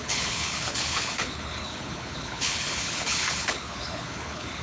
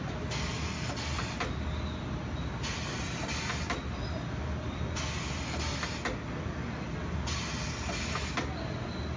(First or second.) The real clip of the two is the second